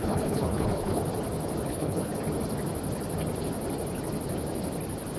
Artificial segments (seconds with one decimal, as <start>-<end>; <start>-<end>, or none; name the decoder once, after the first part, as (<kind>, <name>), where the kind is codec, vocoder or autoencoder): 0.0-1.0 (codec, HILCodec); 1.7-2.1